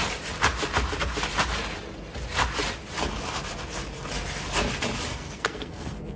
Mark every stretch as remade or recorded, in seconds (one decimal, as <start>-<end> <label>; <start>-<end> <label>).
0.0-5.1 recorded; 5.1-6.2 remade